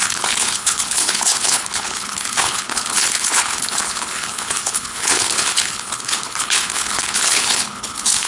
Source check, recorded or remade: remade